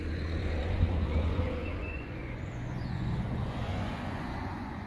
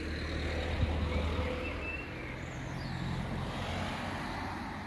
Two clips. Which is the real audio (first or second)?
second